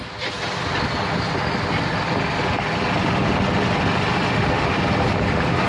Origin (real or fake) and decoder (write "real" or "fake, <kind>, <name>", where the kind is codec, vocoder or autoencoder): fake, vocoder, BigVGAN v2